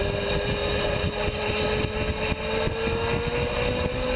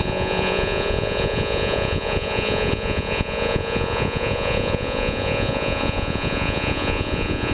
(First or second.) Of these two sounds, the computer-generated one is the second